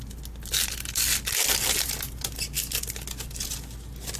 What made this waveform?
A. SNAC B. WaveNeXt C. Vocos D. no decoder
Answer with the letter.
D